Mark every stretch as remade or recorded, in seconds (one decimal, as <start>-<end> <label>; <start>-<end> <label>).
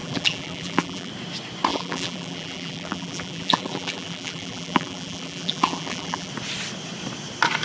0.0-1.1 remade; 1.1-1.7 recorded; 1.7-6.3 remade; 6.3-7.6 recorded